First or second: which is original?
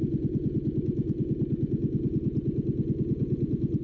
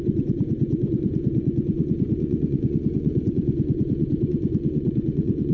first